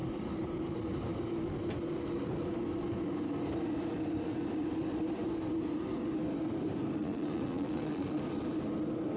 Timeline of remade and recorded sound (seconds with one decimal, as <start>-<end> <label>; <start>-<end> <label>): 0.0-7.0 recorded; 7.0-8.2 remade; 8.2-9.2 recorded